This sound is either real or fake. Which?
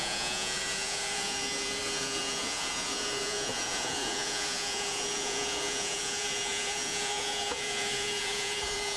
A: fake